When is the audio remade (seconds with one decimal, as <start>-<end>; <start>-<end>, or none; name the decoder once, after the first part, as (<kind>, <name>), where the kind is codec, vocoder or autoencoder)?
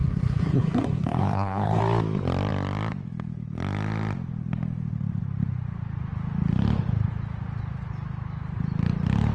0.0-1.8 (codec, SNAC)